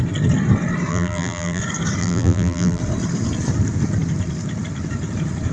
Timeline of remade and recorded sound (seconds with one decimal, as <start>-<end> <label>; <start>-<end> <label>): 0.0-0.9 recorded; 0.9-1.6 remade; 1.6-2.0 recorded; 2.0-2.8 remade; 2.8-5.5 recorded